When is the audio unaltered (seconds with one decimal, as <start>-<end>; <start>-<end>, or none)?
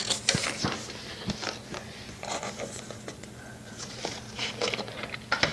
0.0-1.6; 4.0-5.5